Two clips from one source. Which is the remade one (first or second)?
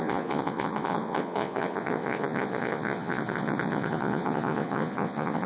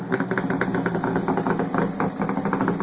first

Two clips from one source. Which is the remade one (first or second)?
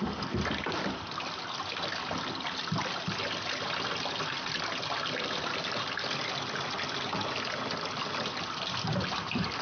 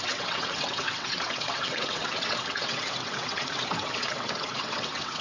second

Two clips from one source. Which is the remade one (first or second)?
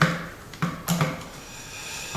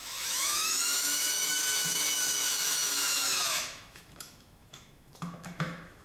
second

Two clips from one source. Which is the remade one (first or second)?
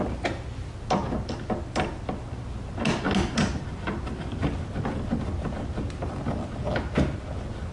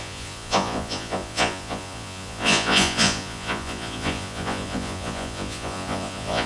second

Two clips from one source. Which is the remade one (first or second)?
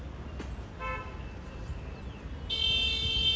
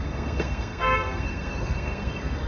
second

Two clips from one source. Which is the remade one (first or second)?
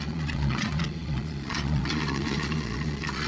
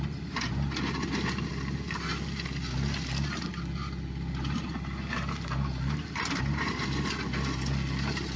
first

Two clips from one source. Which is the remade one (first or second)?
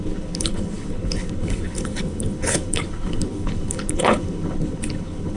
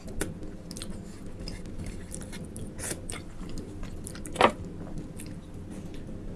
first